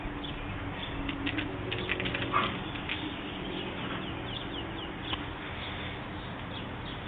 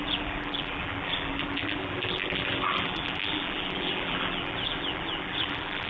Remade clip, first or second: second